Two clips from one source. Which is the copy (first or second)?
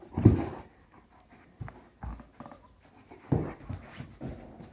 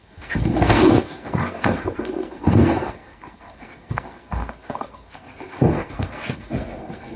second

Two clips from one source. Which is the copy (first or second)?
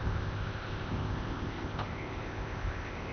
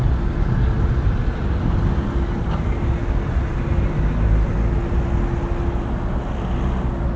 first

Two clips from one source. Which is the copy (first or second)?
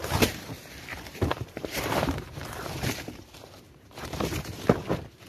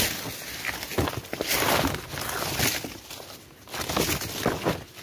first